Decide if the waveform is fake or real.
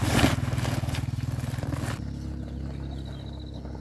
real